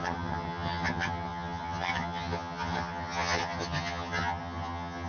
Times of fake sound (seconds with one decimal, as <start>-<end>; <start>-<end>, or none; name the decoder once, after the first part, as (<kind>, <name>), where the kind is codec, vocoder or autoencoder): 0.0-5.1 (vocoder, HiFi-GAN)